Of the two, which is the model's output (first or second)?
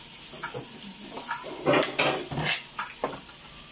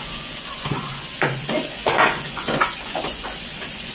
second